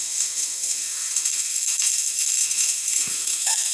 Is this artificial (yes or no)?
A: yes